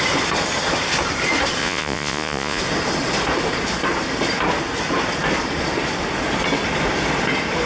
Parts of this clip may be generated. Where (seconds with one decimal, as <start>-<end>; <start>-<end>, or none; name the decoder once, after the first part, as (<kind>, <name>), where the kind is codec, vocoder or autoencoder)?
1.6-2.6 (vocoder, Vocos)